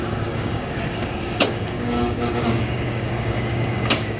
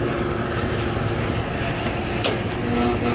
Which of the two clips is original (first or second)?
second